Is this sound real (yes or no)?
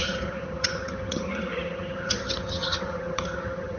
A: no